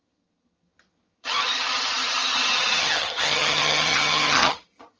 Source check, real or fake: fake